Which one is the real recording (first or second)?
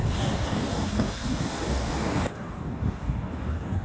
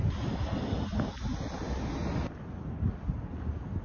second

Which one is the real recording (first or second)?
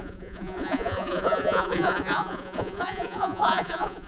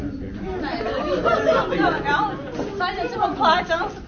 second